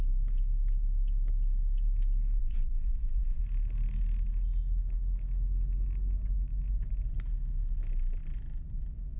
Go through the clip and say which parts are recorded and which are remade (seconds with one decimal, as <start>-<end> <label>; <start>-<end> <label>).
0.0-2.4 recorded; 2.4-3.4 remade; 3.4-9.2 recorded